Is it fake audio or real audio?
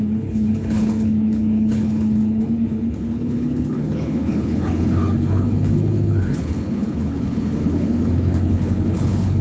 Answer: fake